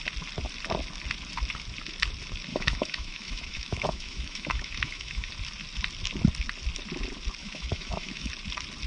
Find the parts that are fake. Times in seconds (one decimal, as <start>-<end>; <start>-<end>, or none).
2.5-5.3; 7.4-8.3